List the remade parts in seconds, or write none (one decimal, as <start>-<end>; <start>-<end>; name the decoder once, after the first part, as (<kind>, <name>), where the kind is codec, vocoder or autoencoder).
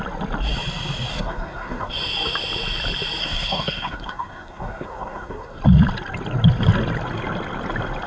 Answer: 1.1-1.9 (codec, SNAC); 3.2-5.6